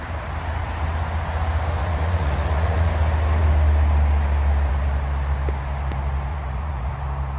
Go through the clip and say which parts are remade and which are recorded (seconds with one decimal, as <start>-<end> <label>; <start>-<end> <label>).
0.0-1.8 recorded; 1.8-2.9 remade; 2.9-6.3 recorded; 6.3-6.9 remade; 6.9-7.4 recorded